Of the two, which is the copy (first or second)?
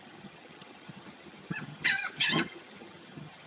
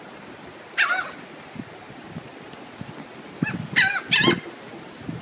first